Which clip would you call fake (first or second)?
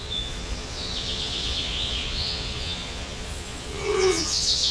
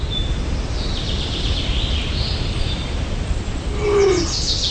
first